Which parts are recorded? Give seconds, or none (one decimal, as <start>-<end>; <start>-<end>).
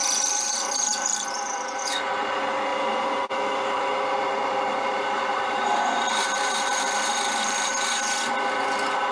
1.8-2.7; 7.7-9.1